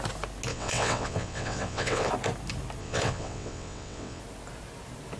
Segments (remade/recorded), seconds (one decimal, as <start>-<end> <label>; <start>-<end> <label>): 0.0-0.5 recorded; 0.5-2.1 remade; 2.1-2.8 recorded; 2.8-4.2 remade; 4.2-5.2 recorded